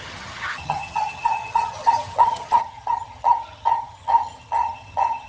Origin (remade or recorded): remade